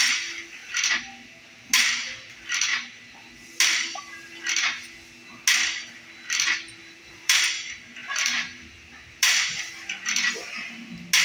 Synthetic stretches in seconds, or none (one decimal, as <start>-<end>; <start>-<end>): 6.8-7.4; 8.0-9.6